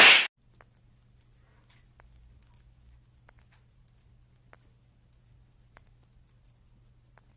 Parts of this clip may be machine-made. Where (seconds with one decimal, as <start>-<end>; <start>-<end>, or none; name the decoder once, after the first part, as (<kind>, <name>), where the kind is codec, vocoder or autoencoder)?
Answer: none